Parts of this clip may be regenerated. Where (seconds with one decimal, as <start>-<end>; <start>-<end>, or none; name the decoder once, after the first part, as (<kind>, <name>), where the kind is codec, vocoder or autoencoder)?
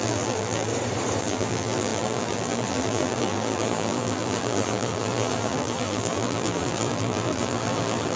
0.0-0.7 (vocoder, BigVGAN v2); 1.2-8.2